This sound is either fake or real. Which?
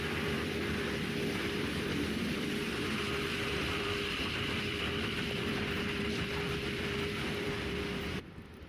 fake